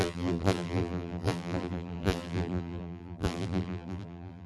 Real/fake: fake